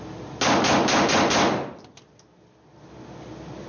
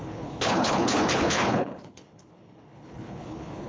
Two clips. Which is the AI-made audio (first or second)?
second